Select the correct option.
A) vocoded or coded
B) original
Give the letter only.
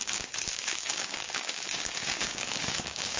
A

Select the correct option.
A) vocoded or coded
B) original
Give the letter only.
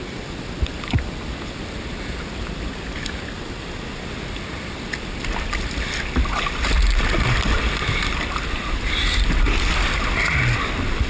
B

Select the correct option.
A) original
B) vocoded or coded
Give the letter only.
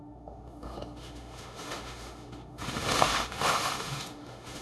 B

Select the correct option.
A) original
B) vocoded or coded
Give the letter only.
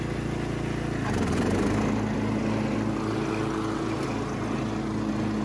A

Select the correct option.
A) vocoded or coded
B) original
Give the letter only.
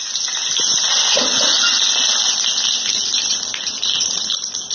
B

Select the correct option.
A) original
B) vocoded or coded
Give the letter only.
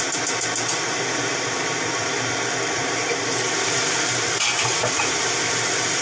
A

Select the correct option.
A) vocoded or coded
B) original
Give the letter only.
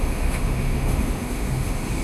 A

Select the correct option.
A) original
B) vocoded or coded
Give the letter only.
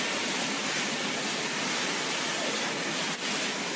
A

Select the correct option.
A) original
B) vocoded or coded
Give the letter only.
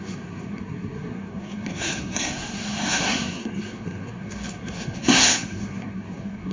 B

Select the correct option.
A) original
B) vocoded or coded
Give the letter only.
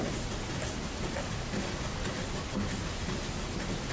A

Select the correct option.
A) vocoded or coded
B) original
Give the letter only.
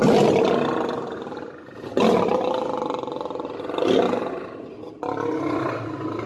B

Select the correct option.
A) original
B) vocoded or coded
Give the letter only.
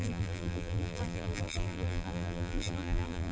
B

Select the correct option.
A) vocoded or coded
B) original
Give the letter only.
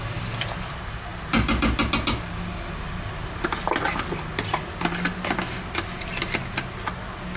B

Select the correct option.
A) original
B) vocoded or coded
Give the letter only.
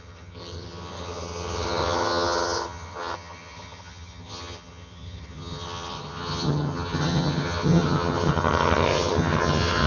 B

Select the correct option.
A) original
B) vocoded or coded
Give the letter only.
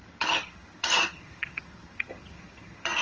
B